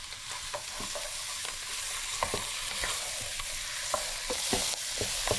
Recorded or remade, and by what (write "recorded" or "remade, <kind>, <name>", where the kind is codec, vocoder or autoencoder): recorded